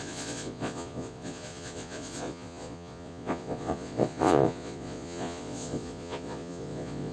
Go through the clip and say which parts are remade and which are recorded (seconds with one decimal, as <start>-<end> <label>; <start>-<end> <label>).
0.0-7.1 remade